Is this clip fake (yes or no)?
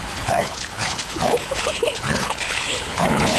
yes